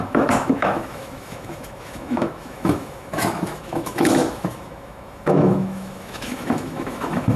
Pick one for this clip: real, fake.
fake